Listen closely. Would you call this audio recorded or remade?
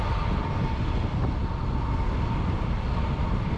recorded